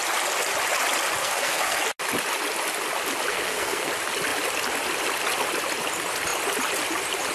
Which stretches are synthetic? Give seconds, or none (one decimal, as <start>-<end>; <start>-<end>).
1.2-1.8; 3.3-3.9